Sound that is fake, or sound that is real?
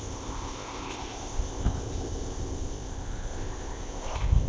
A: fake